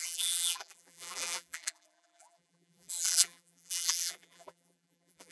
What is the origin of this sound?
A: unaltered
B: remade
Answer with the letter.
B